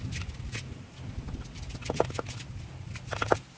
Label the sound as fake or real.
real